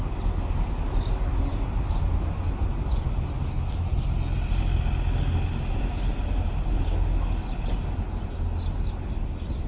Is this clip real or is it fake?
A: real